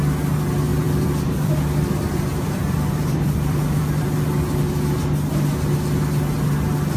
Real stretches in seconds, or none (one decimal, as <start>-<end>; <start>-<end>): 0.0-0.7; 1.5-2.3; 5.0-7.0